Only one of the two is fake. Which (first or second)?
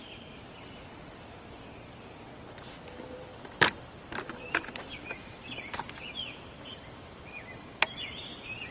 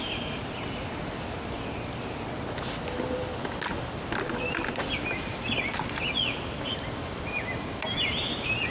first